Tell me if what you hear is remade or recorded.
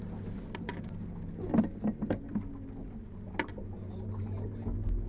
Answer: recorded